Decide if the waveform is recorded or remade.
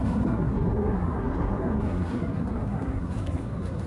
remade